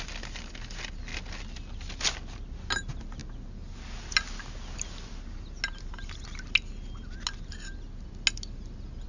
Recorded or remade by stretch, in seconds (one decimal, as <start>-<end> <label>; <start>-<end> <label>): 0.0-9.1 recorded